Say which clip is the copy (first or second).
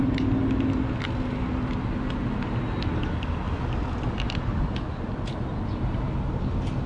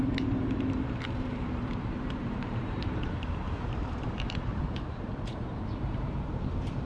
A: second